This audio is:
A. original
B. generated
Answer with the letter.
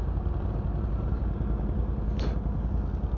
A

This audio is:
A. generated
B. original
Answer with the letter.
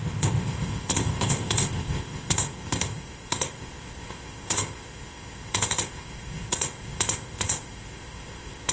A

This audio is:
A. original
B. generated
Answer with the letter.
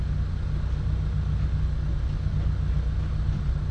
A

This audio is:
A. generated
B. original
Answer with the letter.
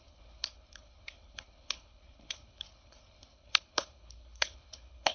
A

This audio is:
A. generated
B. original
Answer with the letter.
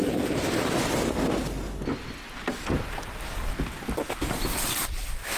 B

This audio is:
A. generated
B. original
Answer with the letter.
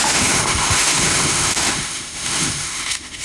A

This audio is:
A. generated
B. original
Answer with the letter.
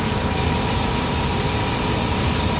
B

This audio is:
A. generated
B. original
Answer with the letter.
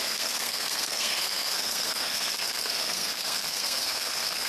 A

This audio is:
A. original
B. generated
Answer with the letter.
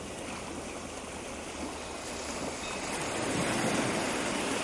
A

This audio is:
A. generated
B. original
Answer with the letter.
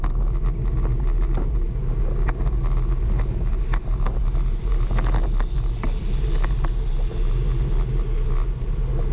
B